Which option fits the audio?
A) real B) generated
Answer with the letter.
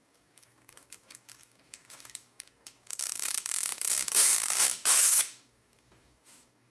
B